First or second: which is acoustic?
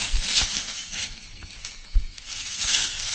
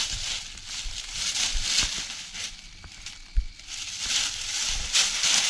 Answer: second